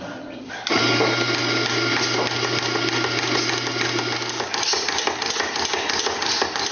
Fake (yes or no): no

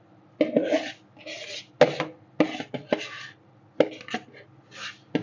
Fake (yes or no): no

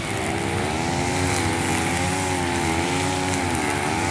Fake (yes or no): no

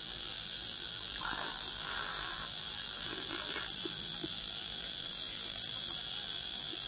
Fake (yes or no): yes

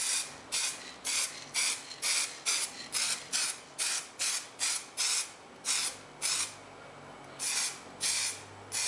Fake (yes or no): no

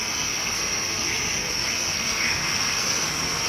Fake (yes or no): yes